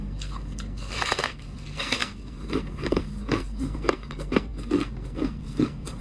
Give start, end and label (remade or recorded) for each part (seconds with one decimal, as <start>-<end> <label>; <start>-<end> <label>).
0.0-6.0 remade